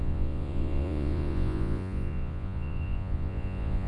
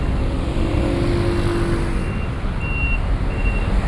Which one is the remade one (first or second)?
first